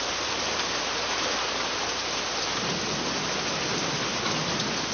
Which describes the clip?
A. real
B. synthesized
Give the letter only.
A